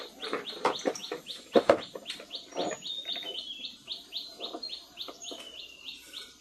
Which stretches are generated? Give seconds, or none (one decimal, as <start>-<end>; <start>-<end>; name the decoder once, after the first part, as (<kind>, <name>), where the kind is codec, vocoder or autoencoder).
none